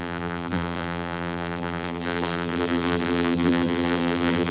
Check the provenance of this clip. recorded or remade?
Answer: remade